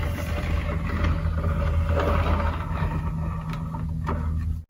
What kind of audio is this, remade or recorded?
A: recorded